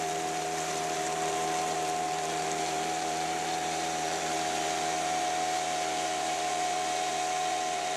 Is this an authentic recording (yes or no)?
no